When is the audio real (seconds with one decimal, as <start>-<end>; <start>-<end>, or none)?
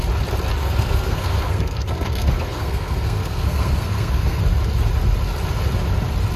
0.0-0.6; 4.4-6.4